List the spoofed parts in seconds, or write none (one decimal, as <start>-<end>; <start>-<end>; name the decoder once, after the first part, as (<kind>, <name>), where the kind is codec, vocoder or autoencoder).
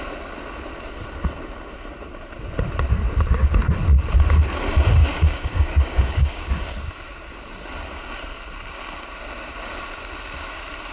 5.0-6.5 (codec, DAC)